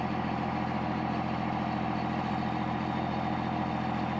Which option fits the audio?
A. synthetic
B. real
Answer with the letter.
A